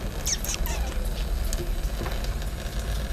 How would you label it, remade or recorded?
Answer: recorded